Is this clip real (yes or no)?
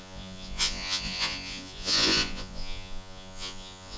no